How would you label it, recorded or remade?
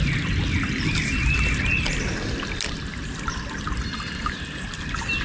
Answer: recorded